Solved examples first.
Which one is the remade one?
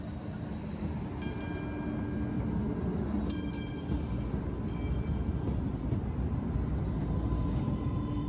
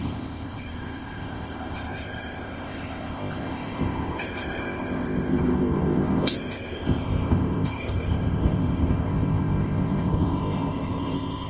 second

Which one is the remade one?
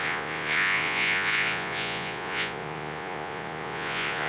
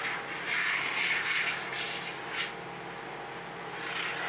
first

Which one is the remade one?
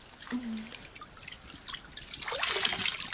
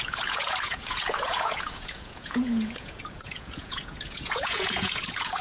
second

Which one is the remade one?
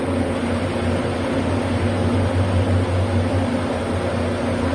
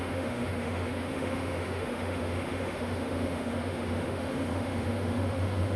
second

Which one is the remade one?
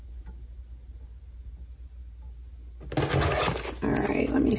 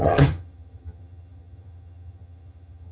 second